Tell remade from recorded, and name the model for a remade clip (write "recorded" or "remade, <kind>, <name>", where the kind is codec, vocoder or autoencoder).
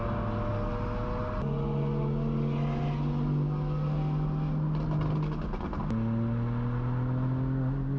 recorded